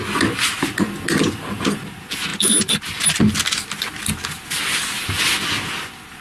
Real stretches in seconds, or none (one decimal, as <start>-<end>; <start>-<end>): 0.0-6.2